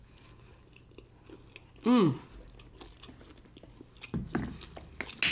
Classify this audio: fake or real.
real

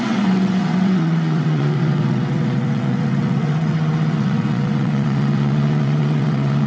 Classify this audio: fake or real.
fake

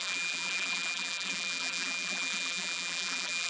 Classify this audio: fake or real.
fake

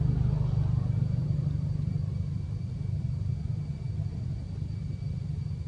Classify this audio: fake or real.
real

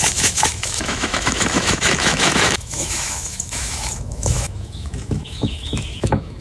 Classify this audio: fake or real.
fake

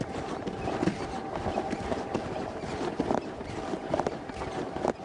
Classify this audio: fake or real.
real